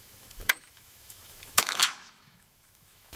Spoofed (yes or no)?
yes